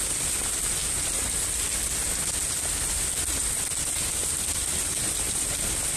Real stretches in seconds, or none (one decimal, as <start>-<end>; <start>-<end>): 0.0-6.0